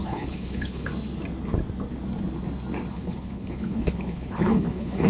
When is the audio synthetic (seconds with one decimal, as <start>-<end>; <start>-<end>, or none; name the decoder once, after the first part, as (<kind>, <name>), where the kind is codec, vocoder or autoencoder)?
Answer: 0.0-0.9 (codec, HILCodec); 2.9-5.1